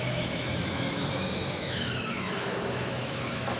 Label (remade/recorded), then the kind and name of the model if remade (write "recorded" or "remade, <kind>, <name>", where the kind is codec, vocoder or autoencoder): remade, autoencoder, DAC-VAE